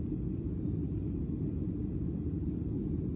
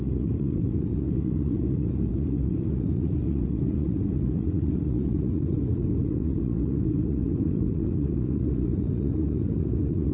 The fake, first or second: second